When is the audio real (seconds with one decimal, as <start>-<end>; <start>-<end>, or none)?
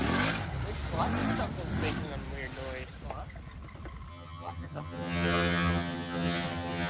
0.0-4.1